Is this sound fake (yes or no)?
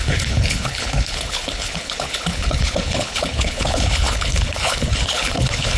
yes